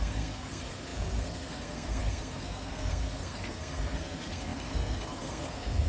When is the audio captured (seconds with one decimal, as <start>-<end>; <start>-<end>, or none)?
none